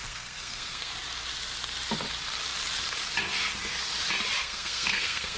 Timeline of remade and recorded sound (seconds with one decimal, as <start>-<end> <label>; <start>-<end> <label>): 0.0-0.9 remade; 0.9-4.4 recorded; 4.4-5.4 remade